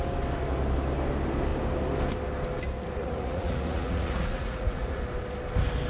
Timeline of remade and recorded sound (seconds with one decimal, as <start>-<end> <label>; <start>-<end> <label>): 0.0-3.0 recorded; 3.0-5.0 remade; 5.0-5.9 recorded